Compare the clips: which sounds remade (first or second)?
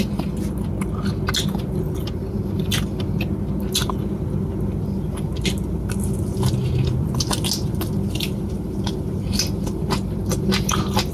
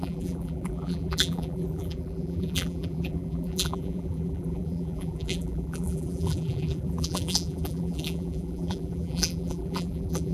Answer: second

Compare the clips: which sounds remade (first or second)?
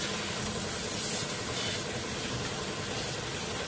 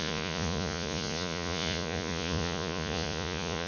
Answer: second